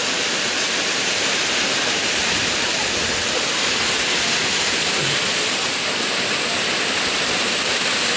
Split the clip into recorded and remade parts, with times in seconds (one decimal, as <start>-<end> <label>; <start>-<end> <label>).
0.0-0.6 recorded; 0.6-2.8 remade; 2.8-7.2 recorded; 7.2-8.2 remade